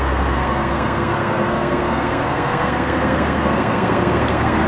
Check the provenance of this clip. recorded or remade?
remade